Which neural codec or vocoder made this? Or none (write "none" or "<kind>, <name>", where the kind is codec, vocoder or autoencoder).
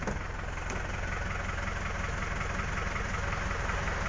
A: none